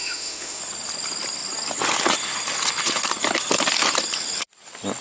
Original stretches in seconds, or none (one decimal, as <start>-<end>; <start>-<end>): 0.6-5.0